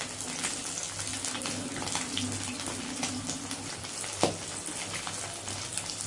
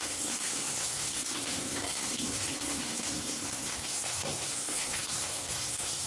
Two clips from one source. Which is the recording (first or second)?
first